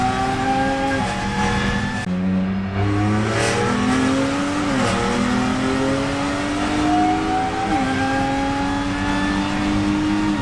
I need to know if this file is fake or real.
real